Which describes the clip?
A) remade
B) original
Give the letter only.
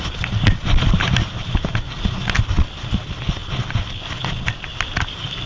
B